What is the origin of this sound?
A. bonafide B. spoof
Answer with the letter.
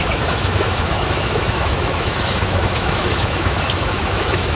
B